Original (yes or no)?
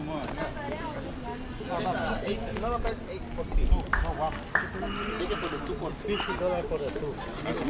yes